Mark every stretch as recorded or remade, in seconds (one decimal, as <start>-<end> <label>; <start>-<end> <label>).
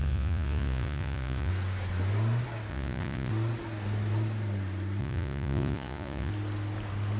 0.0-1.5 remade; 1.5-2.7 recorded; 2.7-3.3 remade; 3.3-5.0 recorded; 5.0-6.3 remade; 6.3-7.2 recorded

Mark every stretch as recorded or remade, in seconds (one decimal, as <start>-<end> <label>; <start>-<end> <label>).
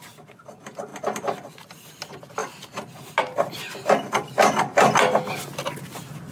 0.0-6.3 recorded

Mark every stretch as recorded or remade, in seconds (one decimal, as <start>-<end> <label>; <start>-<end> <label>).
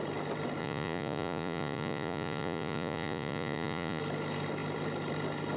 0.0-0.6 recorded; 0.6-4.0 remade; 4.0-5.6 recorded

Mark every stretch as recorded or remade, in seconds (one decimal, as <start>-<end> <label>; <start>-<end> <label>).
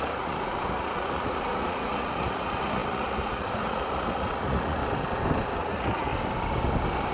0.0-4.8 remade; 4.8-5.6 recorded; 5.6-6.1 remade; 6.1-7.1 recorded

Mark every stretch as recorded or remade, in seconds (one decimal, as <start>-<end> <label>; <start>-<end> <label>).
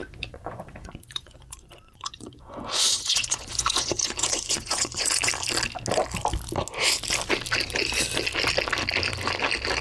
0.0-5.3 remade; 5.3-9.8 recorded